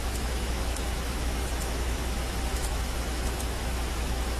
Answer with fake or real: fake